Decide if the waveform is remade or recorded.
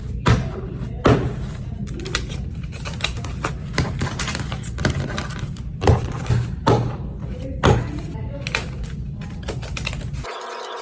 recorded